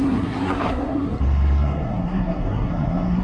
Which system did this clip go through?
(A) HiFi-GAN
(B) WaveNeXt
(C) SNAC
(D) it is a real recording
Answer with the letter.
C